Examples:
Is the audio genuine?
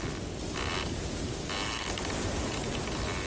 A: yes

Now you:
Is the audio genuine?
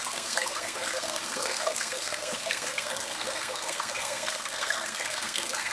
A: no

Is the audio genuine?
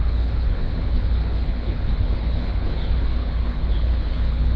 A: no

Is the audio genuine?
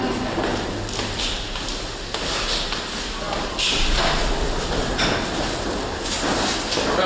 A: yes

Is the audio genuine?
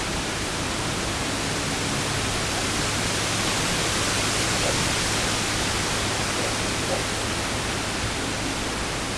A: yes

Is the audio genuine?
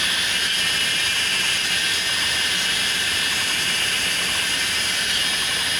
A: yes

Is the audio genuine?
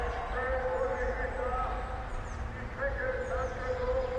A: yes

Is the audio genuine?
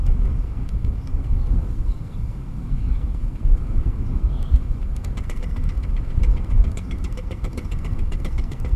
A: no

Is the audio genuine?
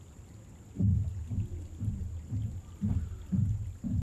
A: yes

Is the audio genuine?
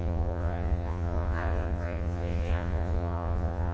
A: no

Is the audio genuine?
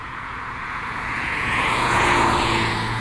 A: no